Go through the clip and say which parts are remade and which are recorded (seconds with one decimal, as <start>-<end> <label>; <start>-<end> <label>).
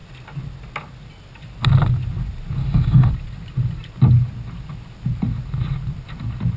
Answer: 0.0-2.6 recorded; 2.6-3.1 remade; 3.1-6.6 recorded